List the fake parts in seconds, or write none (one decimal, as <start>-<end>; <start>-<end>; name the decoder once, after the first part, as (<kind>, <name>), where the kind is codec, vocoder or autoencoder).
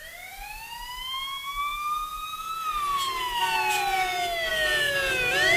none